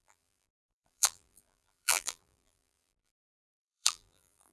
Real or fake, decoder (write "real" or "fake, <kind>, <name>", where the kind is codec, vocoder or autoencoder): fake, vocoder, BigVGAN v2